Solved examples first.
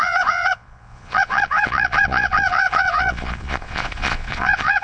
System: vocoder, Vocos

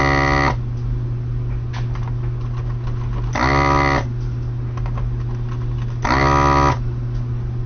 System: none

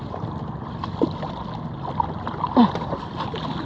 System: none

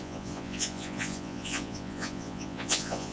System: vocoder, Vocos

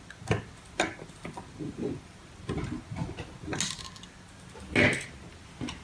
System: none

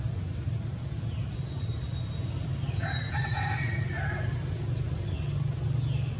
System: none